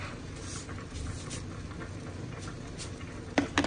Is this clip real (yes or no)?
yes